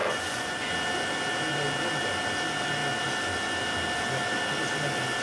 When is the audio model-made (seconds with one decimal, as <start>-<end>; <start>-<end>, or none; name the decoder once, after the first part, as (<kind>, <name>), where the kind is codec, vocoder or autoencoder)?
0.0-0.7 (vocoder, Vocos)